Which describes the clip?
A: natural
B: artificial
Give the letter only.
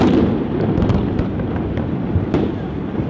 B